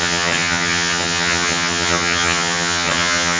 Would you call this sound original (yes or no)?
no